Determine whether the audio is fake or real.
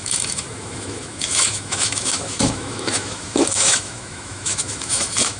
fake